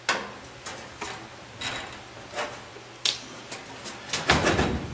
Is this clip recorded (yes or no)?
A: yes